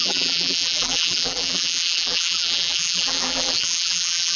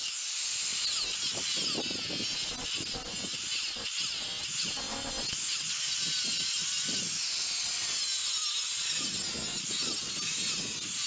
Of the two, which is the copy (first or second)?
first